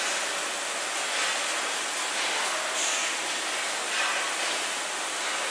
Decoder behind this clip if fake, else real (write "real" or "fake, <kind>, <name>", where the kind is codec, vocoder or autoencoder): real